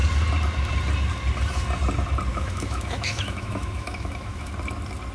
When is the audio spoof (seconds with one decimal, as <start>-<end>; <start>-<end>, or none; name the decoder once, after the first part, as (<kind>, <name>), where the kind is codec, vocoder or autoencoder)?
2.3-4.5 (autoencoder, DAC-VAE)